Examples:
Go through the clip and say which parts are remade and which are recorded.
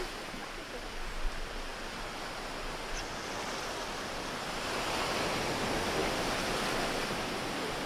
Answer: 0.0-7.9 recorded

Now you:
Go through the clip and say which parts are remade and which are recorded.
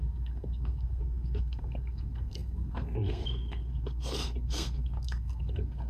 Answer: 0.0-5.9 remade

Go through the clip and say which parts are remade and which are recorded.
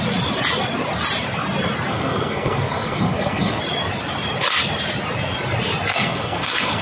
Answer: 0.0-1.9 recorded; 1.9-3.6 remade; 3.6-5.9 recorded; 5.9-6.8 remade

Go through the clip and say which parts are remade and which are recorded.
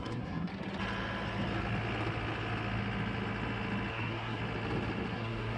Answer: 0.0-0.5 remade; 0.5-3.9 recorded; 3.9-4.4 remade; 4.4-5.1 recorded; 5.1-5.6 remade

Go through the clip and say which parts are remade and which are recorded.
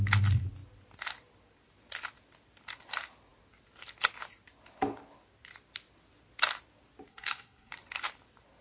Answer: 0.0-7.1 recorded; 7.1-7.7 remade; 7.7-8.6 recorded